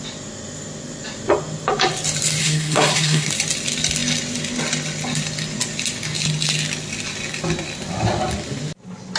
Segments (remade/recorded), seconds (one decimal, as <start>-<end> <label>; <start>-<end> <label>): 0.0-2.4 recorded; 2.4-3.3 remade; 3.3-9.2 recorded